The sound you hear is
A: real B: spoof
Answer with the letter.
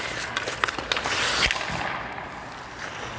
A